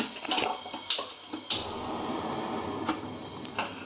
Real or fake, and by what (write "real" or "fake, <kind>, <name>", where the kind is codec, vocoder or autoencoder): real